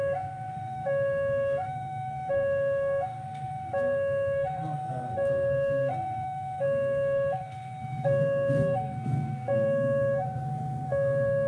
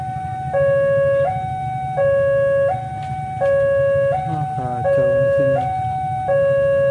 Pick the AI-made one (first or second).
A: first